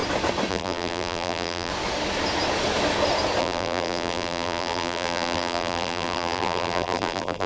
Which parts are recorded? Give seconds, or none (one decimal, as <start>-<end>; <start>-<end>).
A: 0.0-0.5; 1.7-3.4